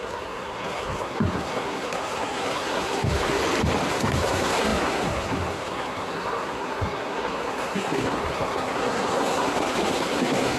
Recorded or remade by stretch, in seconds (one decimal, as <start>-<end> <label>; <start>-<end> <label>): 0.0-3.4 remade; 3.4-3.9 recorded; 3.9-10.6 remade